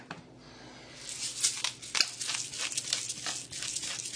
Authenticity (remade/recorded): recorded